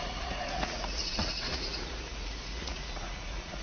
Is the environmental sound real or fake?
fake